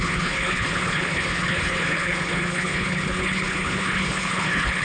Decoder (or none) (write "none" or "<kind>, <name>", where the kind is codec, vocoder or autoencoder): codec, HILCodec